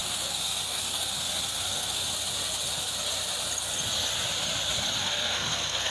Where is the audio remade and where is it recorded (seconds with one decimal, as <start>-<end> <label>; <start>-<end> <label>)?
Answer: 0.0-2.0 remade; 2.0-5.0 recorded; 5.0-5.9 remade